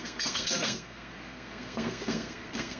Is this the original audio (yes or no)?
no